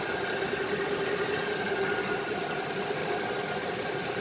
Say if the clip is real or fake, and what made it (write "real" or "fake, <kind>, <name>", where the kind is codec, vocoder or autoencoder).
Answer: real